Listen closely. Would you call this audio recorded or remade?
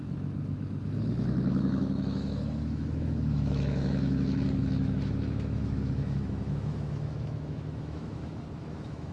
remade